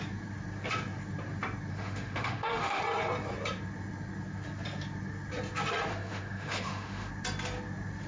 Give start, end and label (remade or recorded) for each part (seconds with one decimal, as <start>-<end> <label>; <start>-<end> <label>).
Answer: 0.0-1.7 recorded; 1.7-2.8 remade; 2.8-5.9 recorded; 5.9-7.1 remade; 7.1-8.1 recorded